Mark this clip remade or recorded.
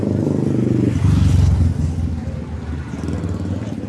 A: recorded